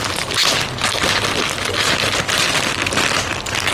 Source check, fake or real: real